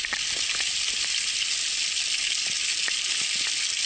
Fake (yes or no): no